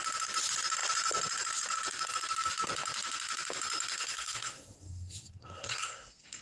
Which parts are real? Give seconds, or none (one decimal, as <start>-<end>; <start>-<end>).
0.0-3.9